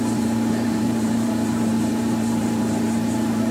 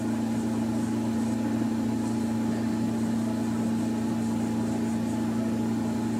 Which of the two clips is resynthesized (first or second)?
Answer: first